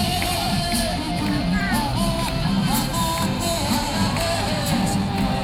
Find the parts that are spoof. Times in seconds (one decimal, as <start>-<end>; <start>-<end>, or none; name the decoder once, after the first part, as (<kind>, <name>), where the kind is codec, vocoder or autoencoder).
0.0-1.2 (vocoder, BigVGAN v2); 1.6-4.8